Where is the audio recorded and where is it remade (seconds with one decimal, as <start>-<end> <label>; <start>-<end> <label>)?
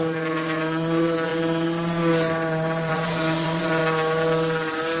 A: 0.0-1.3 remade; 1.3-2.9 recorded; 2.9-3.8 remade; 3.8-5.0 recorded